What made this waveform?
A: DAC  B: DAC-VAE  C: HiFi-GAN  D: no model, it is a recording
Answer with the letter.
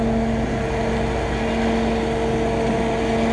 D